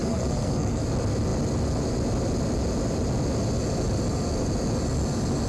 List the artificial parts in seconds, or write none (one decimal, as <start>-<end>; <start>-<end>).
0.0-0.8